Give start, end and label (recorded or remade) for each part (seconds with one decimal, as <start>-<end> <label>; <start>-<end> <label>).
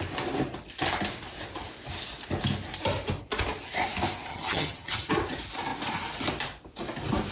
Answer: 0.0-4.3 recorded; 4.3-5.1 remade; 5.1-7.3 recorded